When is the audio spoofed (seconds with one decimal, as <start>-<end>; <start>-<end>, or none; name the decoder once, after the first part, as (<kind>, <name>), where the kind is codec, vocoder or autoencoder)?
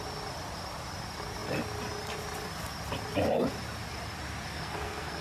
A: 4.5-5.2 (codec, SNAC)